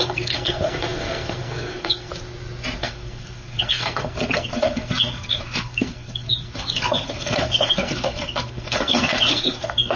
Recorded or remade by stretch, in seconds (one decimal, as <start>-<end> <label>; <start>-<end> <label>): 0.0-2.1 remade; 2.1-2.8 recorded; 2.8-10.0 remade

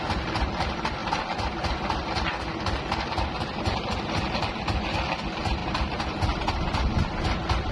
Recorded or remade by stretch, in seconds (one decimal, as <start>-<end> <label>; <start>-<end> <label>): 0.0-7.7 recorded